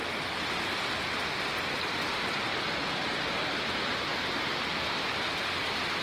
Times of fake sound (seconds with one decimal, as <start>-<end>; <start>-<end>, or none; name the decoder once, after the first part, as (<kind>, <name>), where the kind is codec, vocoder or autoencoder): none